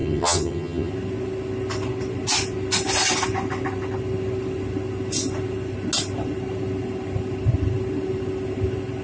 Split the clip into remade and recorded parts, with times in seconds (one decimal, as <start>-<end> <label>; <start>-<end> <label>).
0.0-0.9 remade; 0.9-9.0 recorded